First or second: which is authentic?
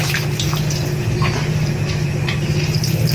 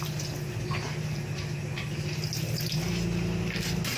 second